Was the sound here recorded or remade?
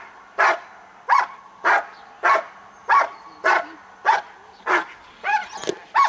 recorded